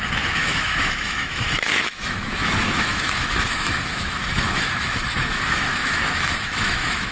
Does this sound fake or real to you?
fake